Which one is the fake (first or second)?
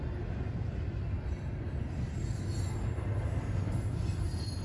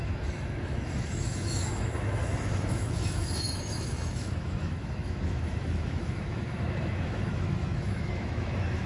second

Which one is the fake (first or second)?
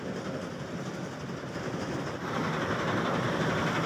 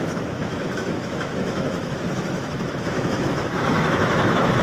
second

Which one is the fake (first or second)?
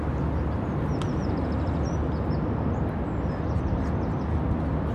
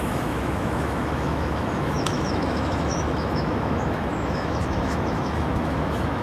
second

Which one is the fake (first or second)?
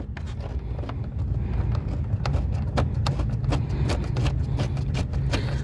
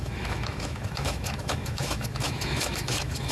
second